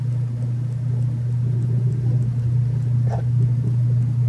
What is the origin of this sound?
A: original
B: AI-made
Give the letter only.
A